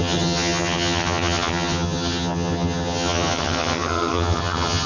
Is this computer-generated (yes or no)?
yes